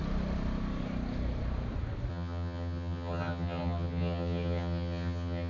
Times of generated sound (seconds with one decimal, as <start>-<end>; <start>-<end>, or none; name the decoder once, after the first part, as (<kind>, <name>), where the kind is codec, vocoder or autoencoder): 2.1-5.5 (vocoder, HiFi-GAN)